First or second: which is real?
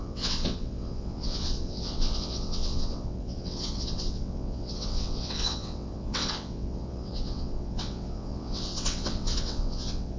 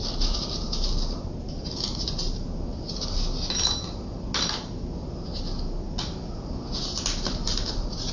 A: second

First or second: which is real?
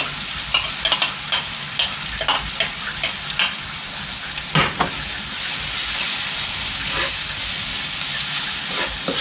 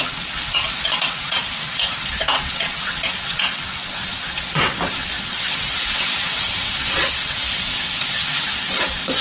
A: first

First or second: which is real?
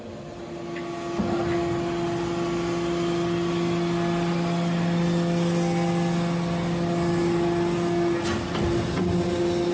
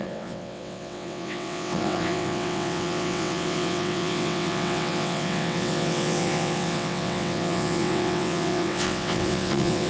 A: first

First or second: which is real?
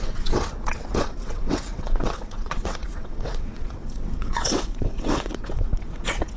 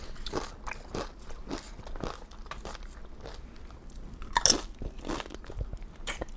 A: second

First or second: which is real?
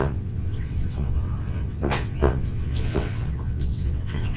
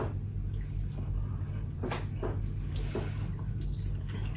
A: second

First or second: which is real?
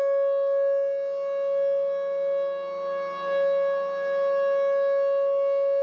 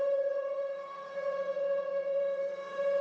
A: first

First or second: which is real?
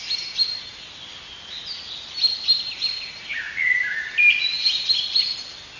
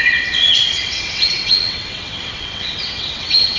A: first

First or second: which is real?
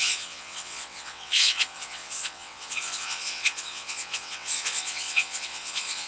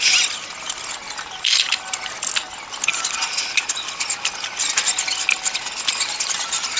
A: second